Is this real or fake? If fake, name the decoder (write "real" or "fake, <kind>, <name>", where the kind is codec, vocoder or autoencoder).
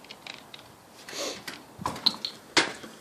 real